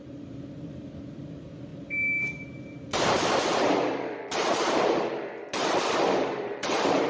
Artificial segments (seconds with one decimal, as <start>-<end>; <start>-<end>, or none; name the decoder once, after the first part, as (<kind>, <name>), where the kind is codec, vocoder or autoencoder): 0.0-7.1 (vocoder, BigVGAN v2)